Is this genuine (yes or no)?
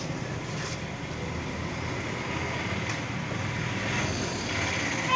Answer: yes